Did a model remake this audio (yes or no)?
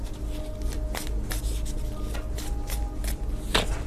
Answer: no